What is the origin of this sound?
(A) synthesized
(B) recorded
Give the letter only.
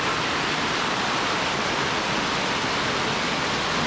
B